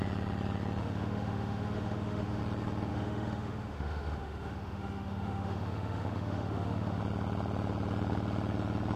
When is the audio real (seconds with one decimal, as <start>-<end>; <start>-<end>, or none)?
0.0-0.8; 2.4-2.9; 7.0-9.0